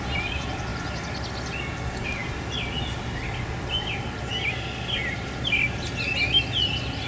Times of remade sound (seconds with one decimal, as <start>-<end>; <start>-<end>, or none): none